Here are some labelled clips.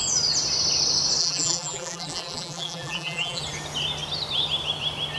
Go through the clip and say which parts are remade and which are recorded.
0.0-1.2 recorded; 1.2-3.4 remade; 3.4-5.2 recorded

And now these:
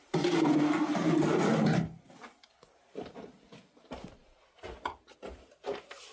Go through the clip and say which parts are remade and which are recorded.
0.0-1.5 remade; 1.5-6.1 recorded

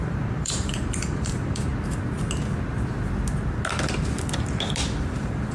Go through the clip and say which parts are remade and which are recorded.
0.0-1.7 remade; 1.7-5.0 recorded; 5.0-5.5 remade

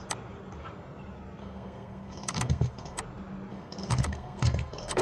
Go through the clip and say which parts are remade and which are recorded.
0.0-1.4 recorded; 1.4-3.0 remade; 3.0-3.5 recorded; 3.5-5.0 remade